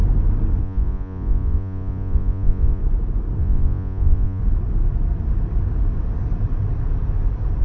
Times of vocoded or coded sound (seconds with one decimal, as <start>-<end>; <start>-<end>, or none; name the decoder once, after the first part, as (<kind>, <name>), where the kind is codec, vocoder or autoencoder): 0.6-2.8 (vocoder, Vocos); 3.4-4.4